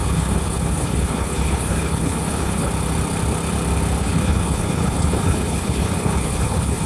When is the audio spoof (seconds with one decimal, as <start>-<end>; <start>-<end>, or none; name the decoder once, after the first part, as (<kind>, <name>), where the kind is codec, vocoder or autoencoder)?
0.0-2.7 (codec, HILCodec); 4.0-6.9

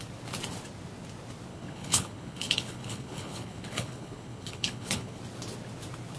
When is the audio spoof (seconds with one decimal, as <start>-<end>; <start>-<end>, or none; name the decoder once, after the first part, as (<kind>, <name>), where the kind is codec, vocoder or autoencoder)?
1.5-5.2 (codec, HILCodec)